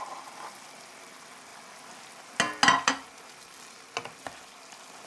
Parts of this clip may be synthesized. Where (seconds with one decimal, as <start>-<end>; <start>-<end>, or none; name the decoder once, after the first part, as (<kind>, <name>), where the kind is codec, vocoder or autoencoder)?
none